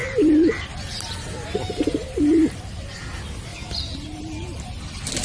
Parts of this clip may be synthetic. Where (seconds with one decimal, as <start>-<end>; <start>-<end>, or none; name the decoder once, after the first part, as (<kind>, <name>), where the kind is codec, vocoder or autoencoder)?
2.0-2.5 (vocoder, BigVGAN v2); 3.5-4.2